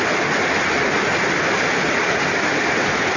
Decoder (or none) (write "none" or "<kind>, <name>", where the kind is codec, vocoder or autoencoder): none